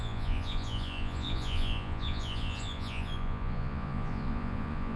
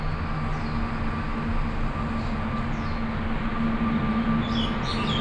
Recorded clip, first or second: second